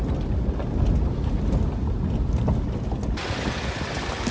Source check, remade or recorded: recorded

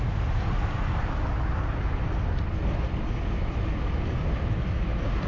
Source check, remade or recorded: recorded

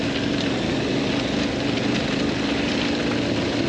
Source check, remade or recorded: recorded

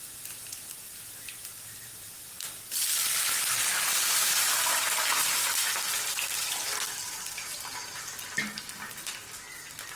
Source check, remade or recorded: recorded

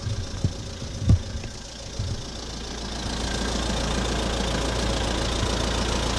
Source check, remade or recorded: recorded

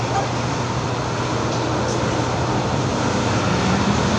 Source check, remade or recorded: recorded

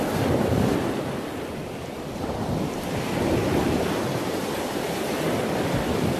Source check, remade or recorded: remade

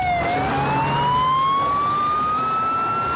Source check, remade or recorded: recorded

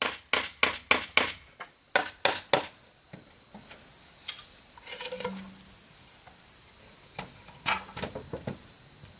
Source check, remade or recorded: recorded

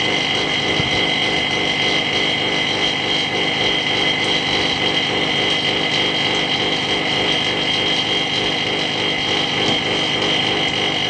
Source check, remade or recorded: recorded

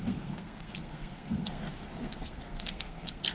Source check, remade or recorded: remade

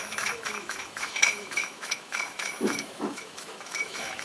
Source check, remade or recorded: remade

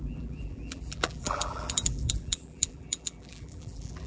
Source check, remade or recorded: remade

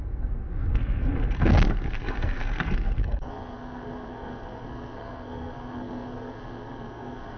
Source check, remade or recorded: remade